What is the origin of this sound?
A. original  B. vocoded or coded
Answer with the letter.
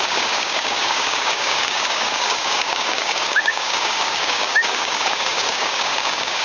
B